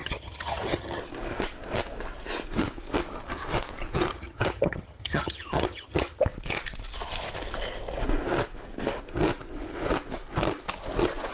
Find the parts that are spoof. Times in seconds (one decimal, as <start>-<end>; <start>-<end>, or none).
0.0-1.0; 4.1-6.2